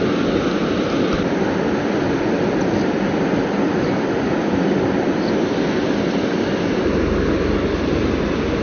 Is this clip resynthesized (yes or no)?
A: no